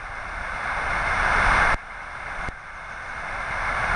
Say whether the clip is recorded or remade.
recorded